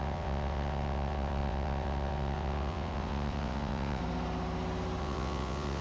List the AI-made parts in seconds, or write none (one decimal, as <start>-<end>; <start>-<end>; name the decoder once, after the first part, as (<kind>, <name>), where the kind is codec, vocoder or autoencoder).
0.0-4.0 (vocoder, WaveNeXt); 5.0-5.8